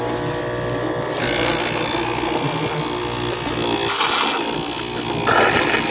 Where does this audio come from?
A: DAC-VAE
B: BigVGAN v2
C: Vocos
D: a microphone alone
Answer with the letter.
D